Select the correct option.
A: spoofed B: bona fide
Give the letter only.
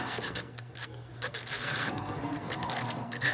A